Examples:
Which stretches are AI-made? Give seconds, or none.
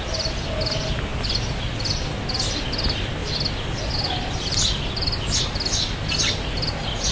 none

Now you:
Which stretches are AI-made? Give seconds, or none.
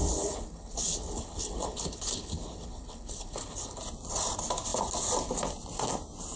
0.0-3.8 (codec, HILCodec)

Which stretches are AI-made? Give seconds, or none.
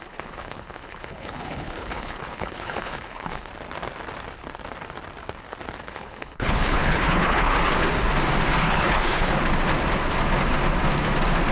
0.0-3.5 (codec, HILCodec); 5.8-7.5; 8.6-9.3